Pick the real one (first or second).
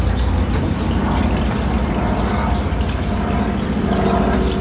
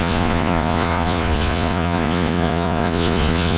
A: first